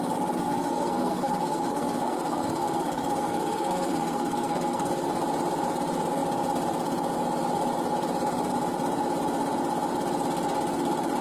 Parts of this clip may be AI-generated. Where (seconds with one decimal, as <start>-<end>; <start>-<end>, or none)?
0.4-4.9